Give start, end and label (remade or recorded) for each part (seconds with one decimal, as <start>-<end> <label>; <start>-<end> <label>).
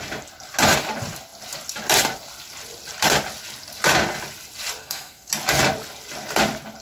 0.0-4.8 recorded; 4.8-5.3 remade; 5.3-6.8 recorded